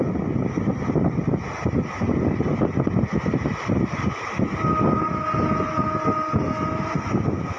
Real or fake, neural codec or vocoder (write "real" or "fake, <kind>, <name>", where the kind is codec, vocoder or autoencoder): real